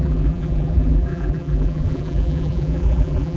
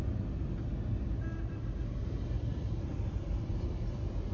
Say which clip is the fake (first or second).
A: first